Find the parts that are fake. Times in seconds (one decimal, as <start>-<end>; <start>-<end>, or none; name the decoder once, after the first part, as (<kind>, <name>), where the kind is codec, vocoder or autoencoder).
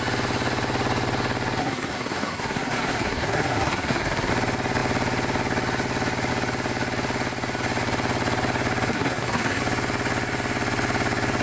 1.6-4.3 (codec, SNAC); 8.9-9.6